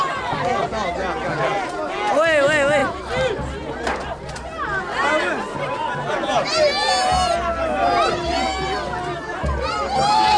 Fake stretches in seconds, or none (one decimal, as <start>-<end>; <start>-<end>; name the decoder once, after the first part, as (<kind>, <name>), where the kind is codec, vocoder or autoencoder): none